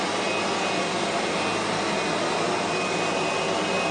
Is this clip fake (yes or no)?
no